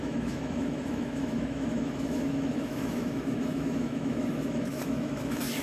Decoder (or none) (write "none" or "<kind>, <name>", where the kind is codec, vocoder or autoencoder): autoencoder, DAC-VAE